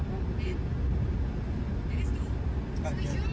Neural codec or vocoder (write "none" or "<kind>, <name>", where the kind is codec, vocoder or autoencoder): none